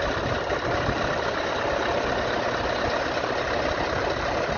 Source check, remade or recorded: recorded